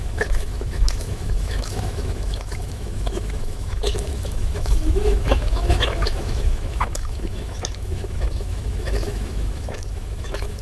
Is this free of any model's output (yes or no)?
no